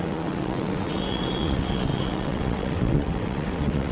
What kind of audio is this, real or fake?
fake